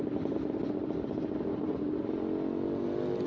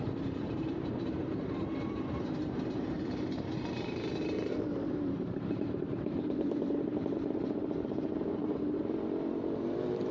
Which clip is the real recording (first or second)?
first